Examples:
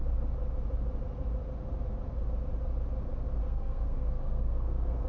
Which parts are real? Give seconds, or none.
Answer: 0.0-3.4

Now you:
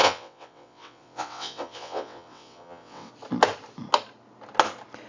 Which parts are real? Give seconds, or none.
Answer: 3.1-5.1